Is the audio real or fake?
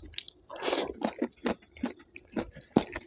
real